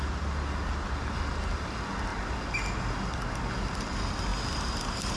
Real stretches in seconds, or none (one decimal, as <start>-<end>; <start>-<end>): 0.0-5.2